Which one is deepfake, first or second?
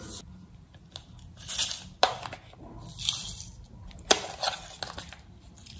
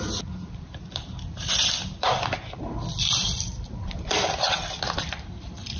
second